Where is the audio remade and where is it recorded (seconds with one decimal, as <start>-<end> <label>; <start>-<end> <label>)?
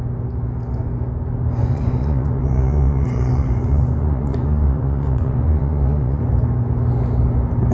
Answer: 0.0-1.6 recorded; 1.6-6.2 remade; 6.2-7.7 recorded